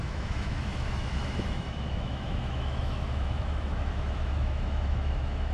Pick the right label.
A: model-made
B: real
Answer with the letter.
A